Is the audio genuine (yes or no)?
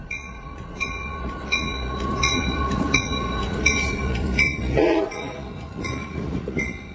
no